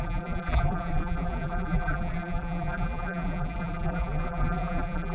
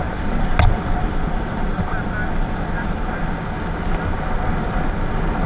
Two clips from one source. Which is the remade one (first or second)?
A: first